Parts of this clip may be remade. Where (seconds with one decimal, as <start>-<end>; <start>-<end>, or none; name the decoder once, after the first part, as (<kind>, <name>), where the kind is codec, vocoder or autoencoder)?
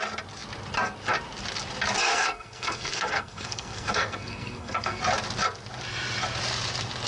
2.1-5.0 (codec, SNAC)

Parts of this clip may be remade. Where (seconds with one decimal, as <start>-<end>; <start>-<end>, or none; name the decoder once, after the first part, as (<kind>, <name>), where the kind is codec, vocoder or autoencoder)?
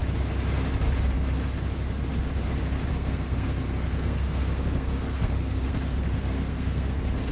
2.9-7.3 (codec, SNAC)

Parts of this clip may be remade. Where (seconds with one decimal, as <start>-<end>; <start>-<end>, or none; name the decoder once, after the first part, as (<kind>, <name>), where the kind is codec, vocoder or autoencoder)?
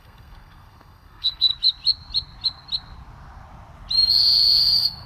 0.0-1.5 (codec, SNAC); 4.6-5.1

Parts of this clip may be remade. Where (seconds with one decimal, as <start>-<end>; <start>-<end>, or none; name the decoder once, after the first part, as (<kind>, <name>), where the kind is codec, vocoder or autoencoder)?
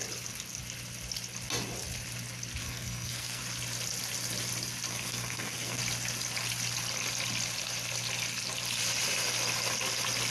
2.6-3.4 (codec, SNAC); 4.9-5.8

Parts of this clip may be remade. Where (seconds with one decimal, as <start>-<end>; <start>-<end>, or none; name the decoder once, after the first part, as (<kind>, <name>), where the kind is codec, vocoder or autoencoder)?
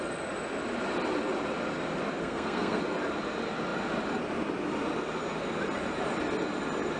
2.2-2.8 (codec, SNAC)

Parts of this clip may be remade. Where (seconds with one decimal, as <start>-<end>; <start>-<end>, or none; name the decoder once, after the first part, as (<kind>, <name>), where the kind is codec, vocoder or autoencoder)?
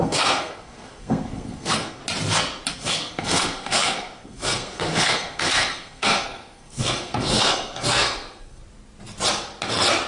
0.0-2.0 (codec, SNAC); 2.7-8.6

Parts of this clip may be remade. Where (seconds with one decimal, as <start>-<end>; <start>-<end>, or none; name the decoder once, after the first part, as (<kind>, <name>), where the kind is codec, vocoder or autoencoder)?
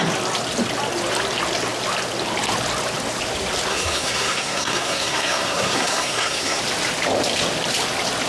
3.7-6.6 (codec, SNAC)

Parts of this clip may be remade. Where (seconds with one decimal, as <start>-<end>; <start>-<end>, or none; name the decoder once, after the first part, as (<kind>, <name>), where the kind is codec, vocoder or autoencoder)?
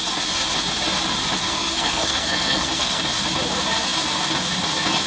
1.4-3.0 (codec, SNAC)